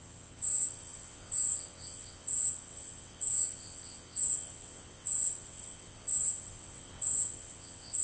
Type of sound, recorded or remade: remade